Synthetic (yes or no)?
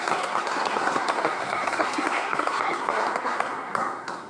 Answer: yes